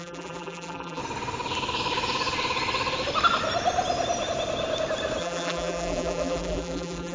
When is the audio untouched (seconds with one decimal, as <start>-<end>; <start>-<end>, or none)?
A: 1.0-5.2